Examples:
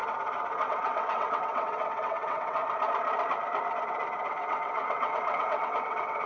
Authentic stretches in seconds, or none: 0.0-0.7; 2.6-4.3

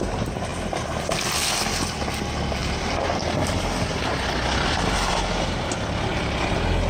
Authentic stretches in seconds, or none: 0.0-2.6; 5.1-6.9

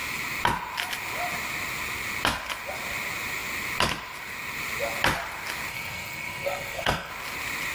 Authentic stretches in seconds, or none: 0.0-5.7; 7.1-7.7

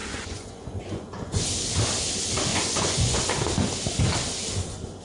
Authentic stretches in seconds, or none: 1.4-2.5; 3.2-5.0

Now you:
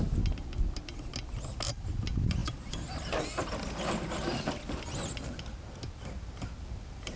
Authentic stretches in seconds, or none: 0.0-7.2

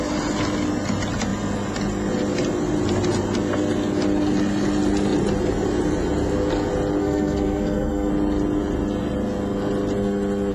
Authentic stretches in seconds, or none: 0.0-7.0; 8.1-10.5